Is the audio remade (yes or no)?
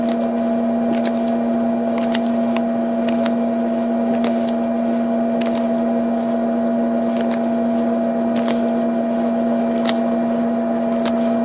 no